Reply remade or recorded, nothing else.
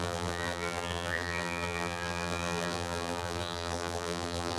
remade